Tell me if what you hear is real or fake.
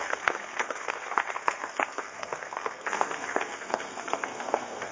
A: fake